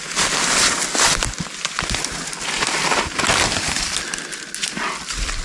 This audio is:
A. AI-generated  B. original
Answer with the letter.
B